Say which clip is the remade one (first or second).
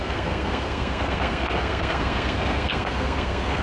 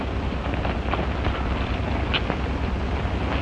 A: first